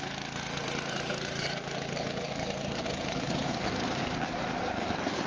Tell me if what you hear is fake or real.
fake